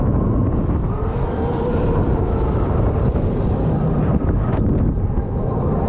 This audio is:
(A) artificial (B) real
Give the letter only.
B